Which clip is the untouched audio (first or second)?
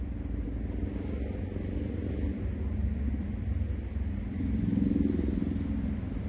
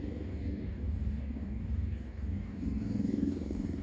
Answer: first